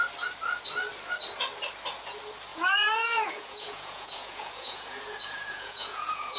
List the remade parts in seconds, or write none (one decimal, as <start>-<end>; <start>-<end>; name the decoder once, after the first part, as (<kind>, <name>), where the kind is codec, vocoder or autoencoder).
2.5-6.4 (vocoder, Vocos)